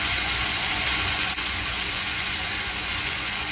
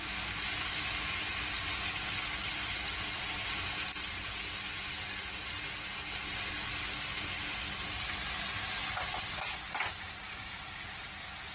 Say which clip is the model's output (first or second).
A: first